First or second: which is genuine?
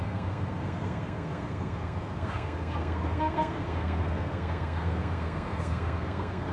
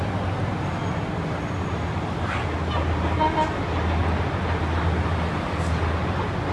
second